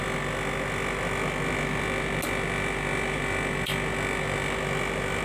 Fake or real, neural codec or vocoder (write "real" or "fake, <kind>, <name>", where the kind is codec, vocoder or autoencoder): real